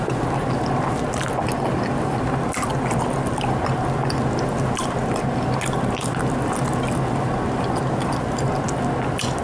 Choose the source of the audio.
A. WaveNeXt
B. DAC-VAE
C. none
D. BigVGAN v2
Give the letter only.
C